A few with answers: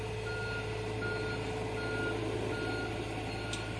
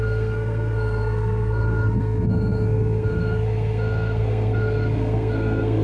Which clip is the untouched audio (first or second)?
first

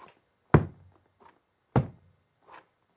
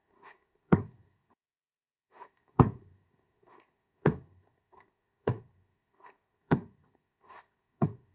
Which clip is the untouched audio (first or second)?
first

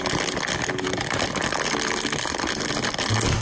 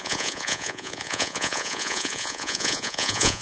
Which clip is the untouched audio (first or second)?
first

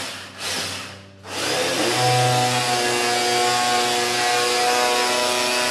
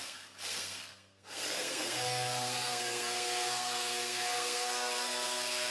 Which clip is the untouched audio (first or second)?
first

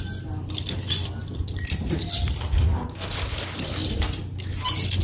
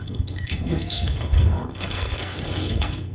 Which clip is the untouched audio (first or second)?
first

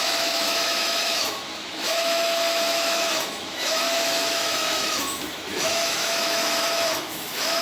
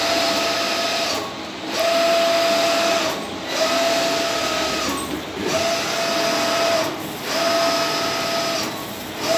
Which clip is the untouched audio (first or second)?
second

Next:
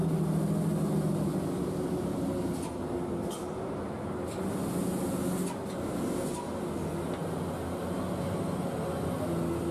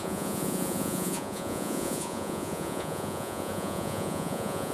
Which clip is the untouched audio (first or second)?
first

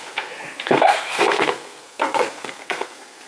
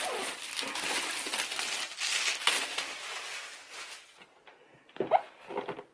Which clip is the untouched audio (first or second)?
second